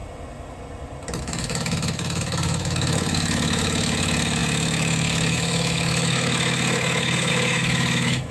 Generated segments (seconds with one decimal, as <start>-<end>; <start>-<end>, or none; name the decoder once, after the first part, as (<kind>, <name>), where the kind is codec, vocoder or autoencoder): 1.2-8.3 (autoencoder, DAC-VAE)